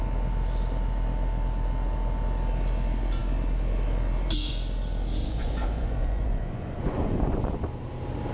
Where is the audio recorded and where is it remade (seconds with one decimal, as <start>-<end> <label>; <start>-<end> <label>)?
0.0-5.2 recorded; 5.2-7.5 remade; 7.5-8.3 recorded